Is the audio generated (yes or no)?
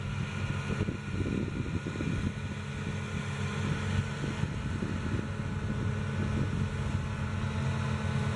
no